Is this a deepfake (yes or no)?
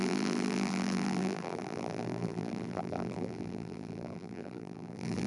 yes